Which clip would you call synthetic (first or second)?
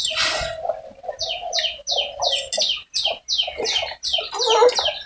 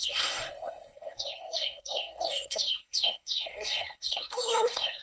second